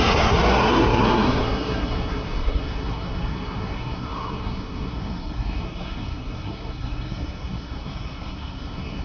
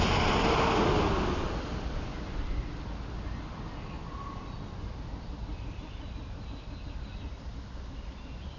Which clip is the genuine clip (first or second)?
second